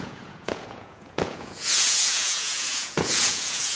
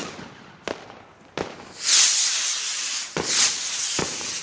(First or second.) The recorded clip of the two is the second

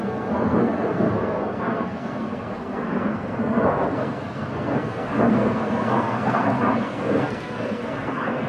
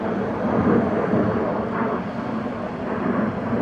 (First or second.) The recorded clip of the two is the second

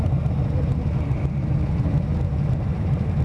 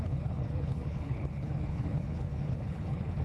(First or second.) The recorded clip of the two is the first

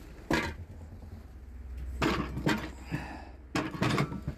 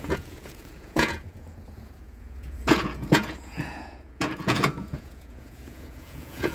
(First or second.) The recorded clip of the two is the first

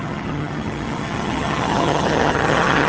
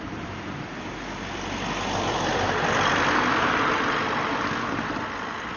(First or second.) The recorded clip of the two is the second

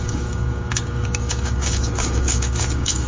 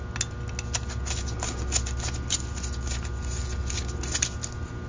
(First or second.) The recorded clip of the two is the second